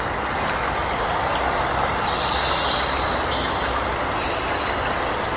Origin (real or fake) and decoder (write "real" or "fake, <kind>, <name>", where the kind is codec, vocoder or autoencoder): real